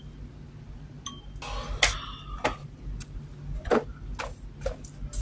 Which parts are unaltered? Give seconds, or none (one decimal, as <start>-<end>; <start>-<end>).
0.0-5.2